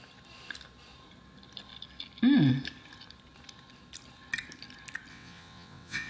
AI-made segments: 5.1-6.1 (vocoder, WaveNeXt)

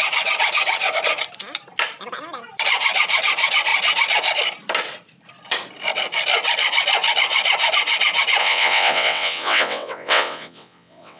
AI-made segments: 8.4-11.2 (vocoder, WaveNeXt)

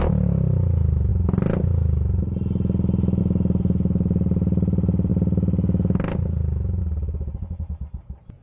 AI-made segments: none